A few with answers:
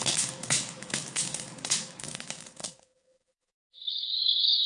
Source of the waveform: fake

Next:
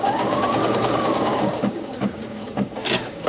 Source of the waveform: fake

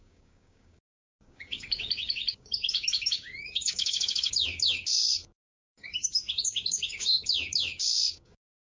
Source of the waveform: fake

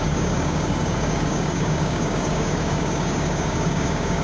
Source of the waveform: fake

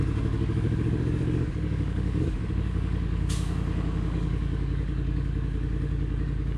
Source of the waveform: fake